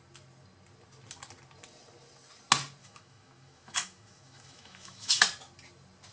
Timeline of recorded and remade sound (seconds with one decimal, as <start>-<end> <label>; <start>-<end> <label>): 0.0-2.8 recorded; 2.8-5.2 remade; 5.2-6.1 recorded